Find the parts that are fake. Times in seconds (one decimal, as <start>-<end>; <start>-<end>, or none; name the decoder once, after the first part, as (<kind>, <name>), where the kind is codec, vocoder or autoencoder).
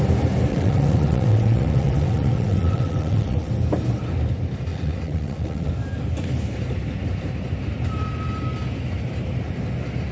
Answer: 0.5-3.5 (vocoder, WaveNeXt); 4.7-5.7